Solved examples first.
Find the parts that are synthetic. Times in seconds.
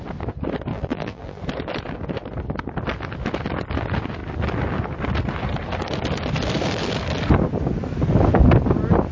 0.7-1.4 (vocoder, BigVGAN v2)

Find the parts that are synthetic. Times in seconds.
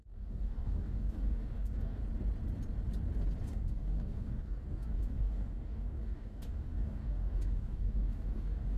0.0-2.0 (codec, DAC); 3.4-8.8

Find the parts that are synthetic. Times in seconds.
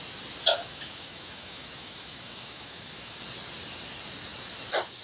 0.5-3.2 (autoencoder, DAC-VAE)